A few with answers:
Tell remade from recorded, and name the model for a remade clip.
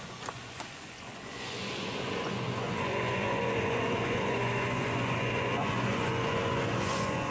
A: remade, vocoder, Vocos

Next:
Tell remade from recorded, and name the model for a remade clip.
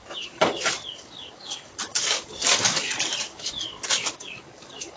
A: remade, codec, DAC